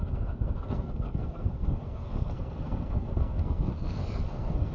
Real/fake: fake